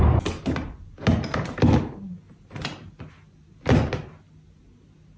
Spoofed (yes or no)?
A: no